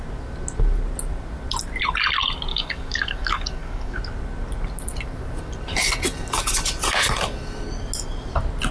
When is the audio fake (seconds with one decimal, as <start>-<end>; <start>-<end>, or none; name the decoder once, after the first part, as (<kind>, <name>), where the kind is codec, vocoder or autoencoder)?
2.5-4.0 (codec, DAC)